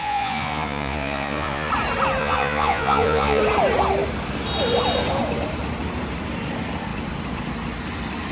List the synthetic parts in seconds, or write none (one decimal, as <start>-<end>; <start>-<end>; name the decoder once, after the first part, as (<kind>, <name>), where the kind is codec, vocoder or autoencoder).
0.0-1.7 (vocoder, Vocos); 2.2-3.4